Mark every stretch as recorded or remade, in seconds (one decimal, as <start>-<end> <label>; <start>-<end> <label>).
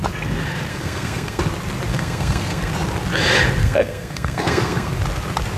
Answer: 0.0-0.7 recorded; 0.7-1.4 remade; 1.4-1.9 recorded; 1.9-2.7 remade; 2.7-3.6 recorded; 3.6-4.9 remade; 4.9-5.6 recorded